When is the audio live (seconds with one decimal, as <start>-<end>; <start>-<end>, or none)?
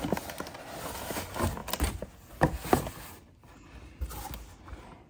0.0-5.1